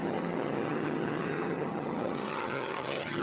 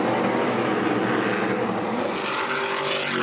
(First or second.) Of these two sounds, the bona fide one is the second